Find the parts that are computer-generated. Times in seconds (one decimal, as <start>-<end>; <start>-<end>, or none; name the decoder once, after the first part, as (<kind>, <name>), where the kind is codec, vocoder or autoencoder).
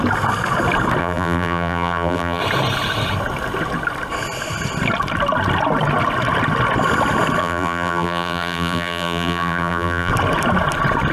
1.0-2.4 (vocoder, BigVGAN v2); 7.4-10.1